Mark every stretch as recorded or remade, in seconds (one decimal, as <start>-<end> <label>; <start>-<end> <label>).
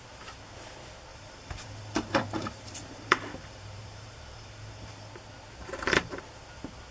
0.0-1.1 recorded; 1.1-5.1 remade; 5.1-5.6 recorded; 5.6-6.2 remade; 6.2-6.9 recorded